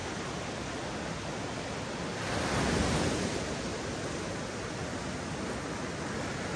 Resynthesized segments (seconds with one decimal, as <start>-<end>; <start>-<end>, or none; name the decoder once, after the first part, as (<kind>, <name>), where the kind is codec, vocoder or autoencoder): none